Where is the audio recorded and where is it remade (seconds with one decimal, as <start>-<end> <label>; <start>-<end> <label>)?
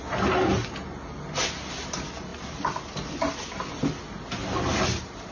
0.0-5.3 recorded